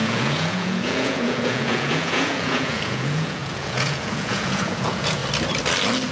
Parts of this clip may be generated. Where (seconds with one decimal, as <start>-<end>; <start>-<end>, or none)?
0.0-5.2